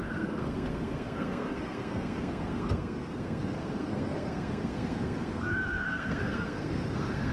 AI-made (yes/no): yes